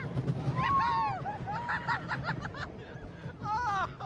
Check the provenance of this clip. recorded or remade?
recorded